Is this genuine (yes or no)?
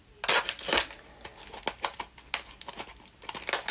yes